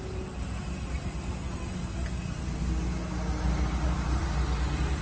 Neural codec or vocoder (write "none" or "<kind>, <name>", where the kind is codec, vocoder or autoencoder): none